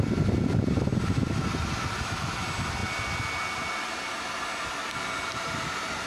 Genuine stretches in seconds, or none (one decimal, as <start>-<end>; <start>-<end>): 0.0-6.1